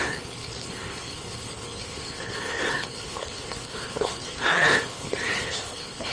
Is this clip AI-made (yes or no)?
yes